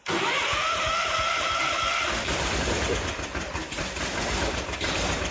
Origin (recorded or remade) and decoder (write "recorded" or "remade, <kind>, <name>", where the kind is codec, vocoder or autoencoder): remade, vocoder, BigVGAN v2